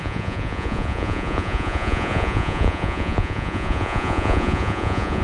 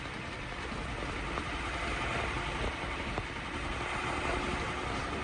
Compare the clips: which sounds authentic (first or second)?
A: second